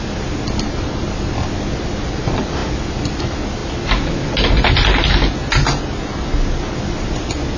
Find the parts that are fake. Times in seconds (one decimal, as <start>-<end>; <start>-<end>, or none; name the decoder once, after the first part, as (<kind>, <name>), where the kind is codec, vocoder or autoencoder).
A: none